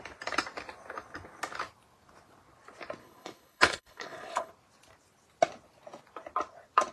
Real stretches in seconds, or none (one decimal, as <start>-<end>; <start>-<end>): 0.0-3.0; 4.5-6.9